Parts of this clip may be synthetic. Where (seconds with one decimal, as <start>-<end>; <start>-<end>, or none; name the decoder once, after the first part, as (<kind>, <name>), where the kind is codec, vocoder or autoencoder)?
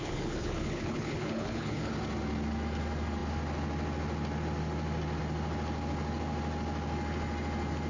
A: 0.0-1.9 (codec, HILCodec)